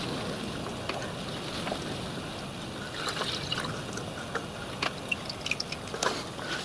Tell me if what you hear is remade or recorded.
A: recorded